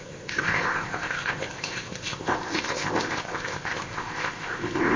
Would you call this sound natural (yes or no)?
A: no